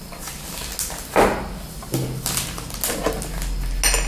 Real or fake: real